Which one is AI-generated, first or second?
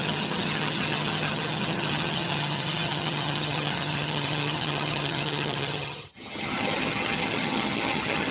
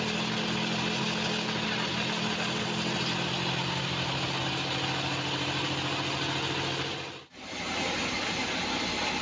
first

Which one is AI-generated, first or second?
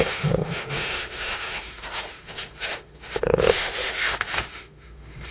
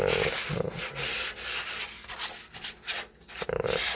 first